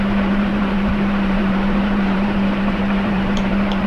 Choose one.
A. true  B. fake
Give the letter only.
B